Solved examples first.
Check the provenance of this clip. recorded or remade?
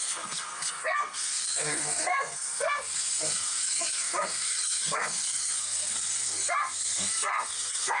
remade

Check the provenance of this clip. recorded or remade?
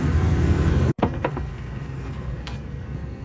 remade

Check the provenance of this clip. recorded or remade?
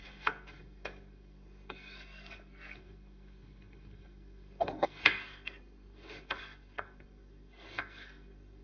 remade